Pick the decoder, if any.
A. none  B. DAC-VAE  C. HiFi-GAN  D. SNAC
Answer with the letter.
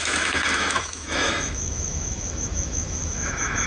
B